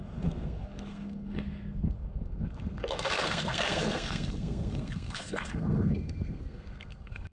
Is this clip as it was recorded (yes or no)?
no